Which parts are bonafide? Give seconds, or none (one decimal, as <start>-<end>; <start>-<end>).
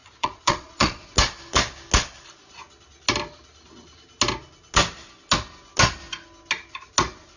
1.0-7.4